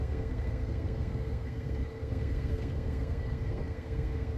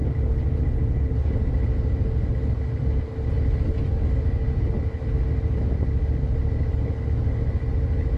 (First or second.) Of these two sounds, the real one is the second